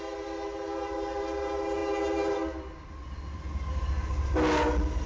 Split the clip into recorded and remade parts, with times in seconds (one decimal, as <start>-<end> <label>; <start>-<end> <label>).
0.0-5.1 recorded